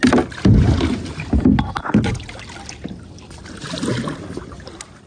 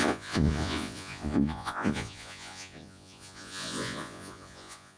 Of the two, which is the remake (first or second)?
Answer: second